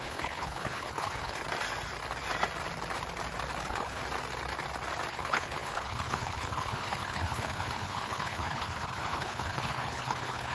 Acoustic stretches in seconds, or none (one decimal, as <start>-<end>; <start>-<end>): 1.4-3.6; 4.0-5.1